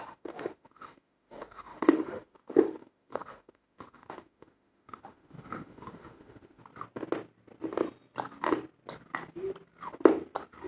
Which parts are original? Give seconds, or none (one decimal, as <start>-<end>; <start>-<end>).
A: 6.6-10.7